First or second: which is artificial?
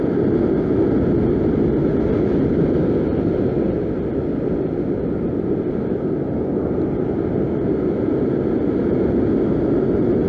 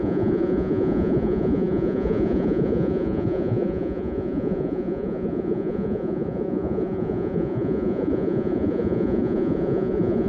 second